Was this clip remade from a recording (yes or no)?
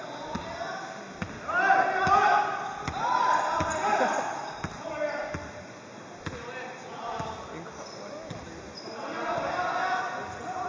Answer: no